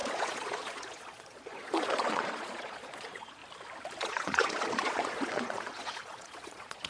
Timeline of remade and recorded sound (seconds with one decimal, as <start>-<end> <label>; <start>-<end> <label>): 0.0-3.4 remade; 3.4-4.0 recorded; 4.0-6.9 remade

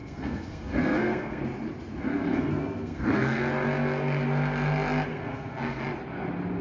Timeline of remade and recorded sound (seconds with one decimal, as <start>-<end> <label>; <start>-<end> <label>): 0.0-1.4 remade; 1.4-2.3 recorded; 2.3-3.4 remade; 3.4-5.1 recorded; 5.1-5.8 remade; 5.8-6.6 recorded

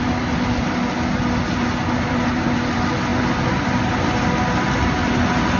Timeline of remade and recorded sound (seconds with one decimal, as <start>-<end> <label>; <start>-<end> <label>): 0.0-5.6 recorded

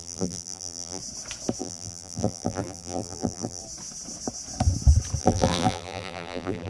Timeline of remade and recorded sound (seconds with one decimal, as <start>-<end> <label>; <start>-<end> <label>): 0.0-1.0 remade; 1.0-1.6 recorded; 1.6-3.6 remade; 3.6-5.2 recorded; 5.2-6.7 remade